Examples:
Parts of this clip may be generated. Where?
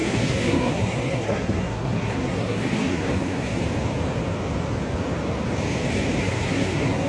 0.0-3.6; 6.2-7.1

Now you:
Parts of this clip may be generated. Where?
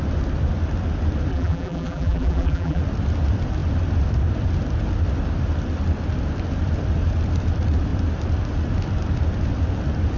1.3-2.8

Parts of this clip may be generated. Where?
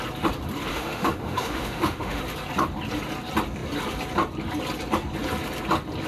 0.7-2.2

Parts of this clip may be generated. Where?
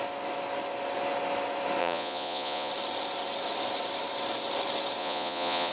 1.8-2.7; 5.0-5.7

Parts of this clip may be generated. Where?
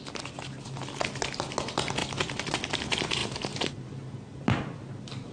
none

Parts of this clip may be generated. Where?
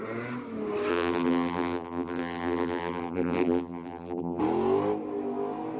0.9-4.4